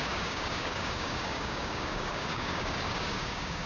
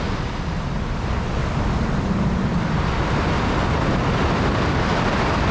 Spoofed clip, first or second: first